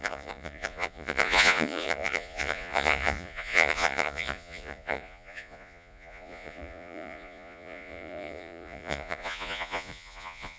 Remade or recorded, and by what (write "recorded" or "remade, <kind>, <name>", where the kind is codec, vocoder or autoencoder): remade, vocoder, Vocos